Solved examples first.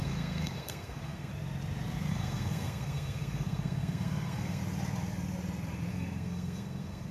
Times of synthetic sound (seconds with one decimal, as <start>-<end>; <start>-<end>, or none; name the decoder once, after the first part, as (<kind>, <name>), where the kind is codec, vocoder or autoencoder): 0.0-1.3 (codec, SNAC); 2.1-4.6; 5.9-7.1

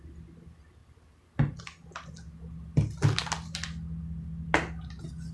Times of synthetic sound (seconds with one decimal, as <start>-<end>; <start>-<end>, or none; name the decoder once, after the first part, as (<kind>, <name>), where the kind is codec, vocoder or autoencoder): none

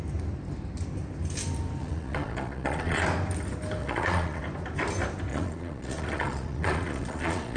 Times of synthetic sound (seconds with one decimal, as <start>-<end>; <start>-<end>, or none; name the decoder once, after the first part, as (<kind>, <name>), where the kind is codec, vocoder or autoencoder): 1.8-3.0 (vocoder, Vocos); 3.8-4.4; 5.3-7.6

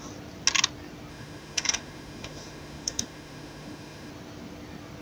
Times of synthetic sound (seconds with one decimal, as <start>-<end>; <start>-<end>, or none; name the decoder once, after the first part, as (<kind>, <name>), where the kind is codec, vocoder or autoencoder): 1.1-4.1 (autoencoder, DAC-VAE)

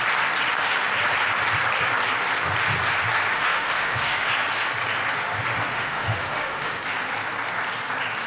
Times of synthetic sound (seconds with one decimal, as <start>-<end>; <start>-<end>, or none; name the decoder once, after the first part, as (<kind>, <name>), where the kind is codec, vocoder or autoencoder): 3.3-4.3 (autoencoder, DAC-VAE); 5.7-6.8